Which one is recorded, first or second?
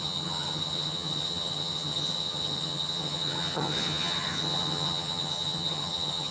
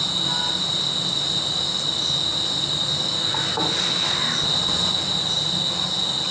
second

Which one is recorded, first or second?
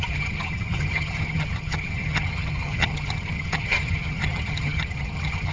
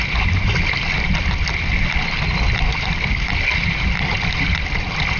second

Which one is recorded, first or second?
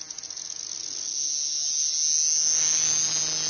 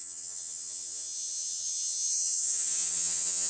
first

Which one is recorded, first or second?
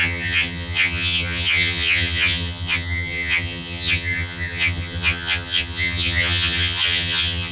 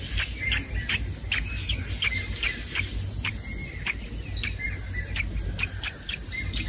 second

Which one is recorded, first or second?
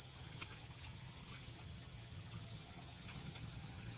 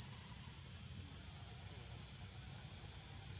second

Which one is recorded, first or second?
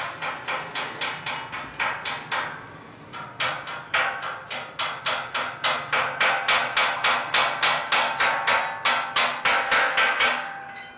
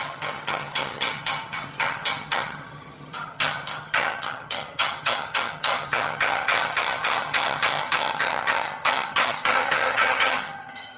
first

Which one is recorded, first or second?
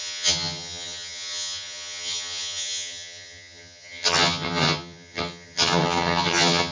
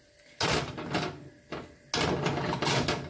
second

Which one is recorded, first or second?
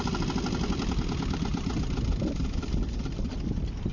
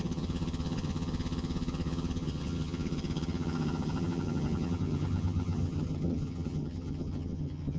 first